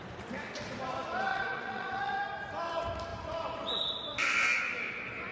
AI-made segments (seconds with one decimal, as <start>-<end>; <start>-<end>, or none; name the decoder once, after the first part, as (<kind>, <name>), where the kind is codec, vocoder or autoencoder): 1.3-2.2 (vocoder, WaveNeXt)